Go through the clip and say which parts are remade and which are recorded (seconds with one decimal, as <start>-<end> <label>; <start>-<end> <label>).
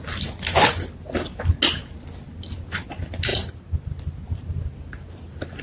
0.0-5.6 recorded